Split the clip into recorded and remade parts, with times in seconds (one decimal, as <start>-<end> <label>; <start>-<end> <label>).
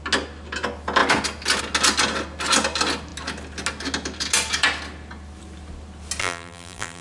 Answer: 0.0-6.2 recorded; 6.2-7.0 remade